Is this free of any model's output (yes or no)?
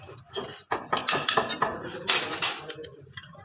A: yes